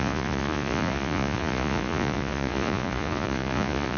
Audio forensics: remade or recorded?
remade